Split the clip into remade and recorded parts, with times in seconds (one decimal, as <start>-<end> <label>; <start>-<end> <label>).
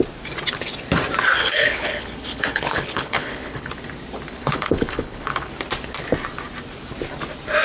0.0-1.4 recorded; 1.4-3.7 remade; 3.7-4.4 recorded; 4.4-5.5 remade; 5.5-7.6 recorded